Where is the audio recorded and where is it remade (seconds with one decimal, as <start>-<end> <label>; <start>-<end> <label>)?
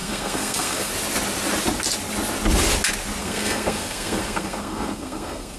0.0-0.9 remade; 0.9-3.2 recorded; 3.2-5.6 remade